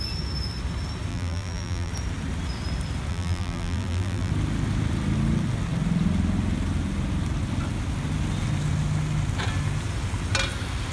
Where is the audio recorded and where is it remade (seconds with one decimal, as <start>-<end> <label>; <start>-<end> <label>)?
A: 0.0-1.1 recorded; 1.1-1.9 remade; 1.9-3.1 recorded; 3.1-4.3 remade; 4.3-10.9 recorded